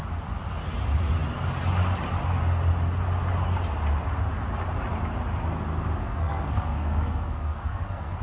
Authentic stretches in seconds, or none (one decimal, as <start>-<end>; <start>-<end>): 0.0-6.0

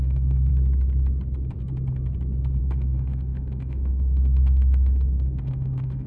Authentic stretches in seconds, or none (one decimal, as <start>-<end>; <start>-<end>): 0.5-2.6

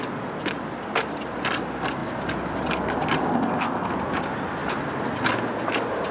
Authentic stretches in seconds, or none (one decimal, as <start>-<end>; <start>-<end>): 0.0-3.3; 3.9-6.1

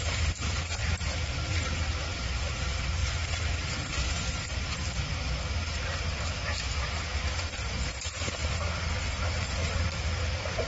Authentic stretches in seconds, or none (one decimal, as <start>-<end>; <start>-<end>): 8.4-9.0

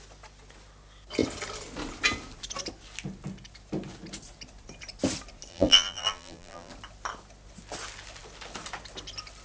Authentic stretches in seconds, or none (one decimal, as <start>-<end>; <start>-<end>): 0.0-5.5; 6.7-9.4

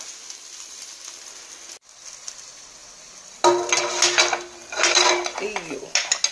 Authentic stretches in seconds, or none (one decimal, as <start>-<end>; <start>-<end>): 0.0-4.6; 5.1-6.3

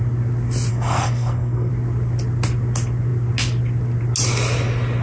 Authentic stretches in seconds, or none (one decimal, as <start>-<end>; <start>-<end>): 0.0-0.7; 1.7-5.0